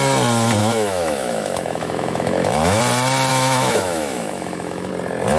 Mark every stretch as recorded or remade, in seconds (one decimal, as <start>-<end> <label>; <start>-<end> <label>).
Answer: 0.0-0.6 recorded; 0.6-2.8 remade; 2.8-3.3 recorded; 3.3-4.9 remade; 4.9-5.4 recorded